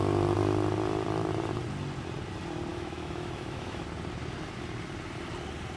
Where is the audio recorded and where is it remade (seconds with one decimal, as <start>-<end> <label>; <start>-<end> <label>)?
0.0-2.7 recorded; 2.7-3.8 remade; 3.8-5.8 recorded